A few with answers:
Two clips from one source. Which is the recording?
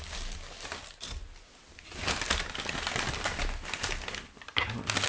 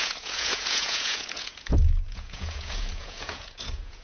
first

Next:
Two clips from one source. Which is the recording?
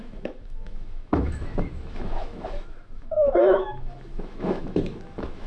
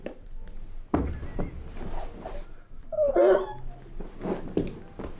second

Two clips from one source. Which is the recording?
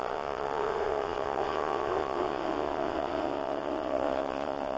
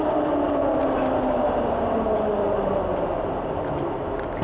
second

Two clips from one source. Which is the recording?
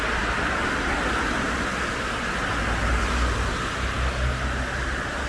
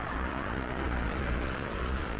first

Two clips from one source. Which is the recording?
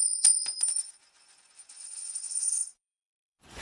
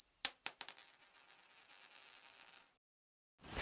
second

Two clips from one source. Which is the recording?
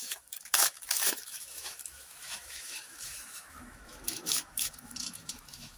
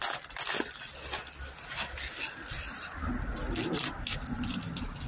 second